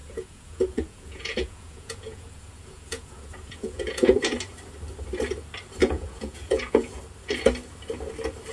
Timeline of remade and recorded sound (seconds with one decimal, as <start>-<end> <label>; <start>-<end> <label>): 0.0-4.2 remade; 4.2-5.8 recorded; 5.8-7.0 remade; 7.0-8.5 recorded